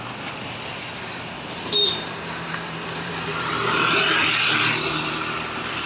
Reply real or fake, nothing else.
fake